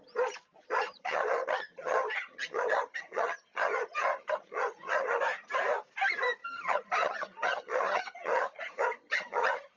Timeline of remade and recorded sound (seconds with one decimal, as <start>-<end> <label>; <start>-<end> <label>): 0.0-0.6 recorded; 0.6-5.2 remade; 5.2-6.4 recorded; 6.4-9.8 remade